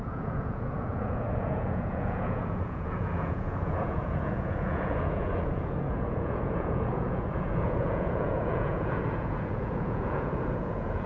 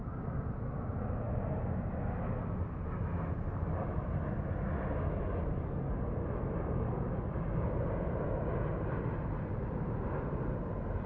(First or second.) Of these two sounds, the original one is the second